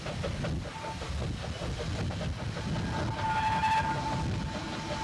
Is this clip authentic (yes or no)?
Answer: yes